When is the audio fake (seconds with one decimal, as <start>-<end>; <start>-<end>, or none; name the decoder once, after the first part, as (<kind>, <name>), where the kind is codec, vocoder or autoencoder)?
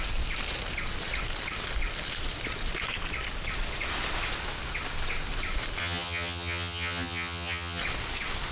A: 5.8-7.8 (vocoder, HiFi-GAN)